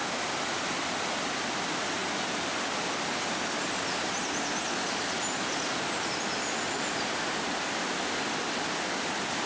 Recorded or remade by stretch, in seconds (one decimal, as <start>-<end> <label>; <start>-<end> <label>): 0.0-9.5 recorded